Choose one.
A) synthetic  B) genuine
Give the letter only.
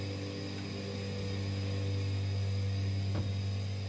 B